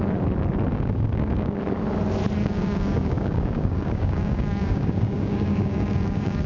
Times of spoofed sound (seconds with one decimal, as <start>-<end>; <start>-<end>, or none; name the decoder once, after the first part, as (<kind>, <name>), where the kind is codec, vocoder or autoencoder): 0.7-1.6 (codec, DAC); 2.4-6.5